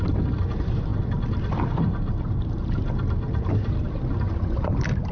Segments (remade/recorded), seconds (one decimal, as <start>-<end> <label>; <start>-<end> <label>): 0.0-5.1 recorded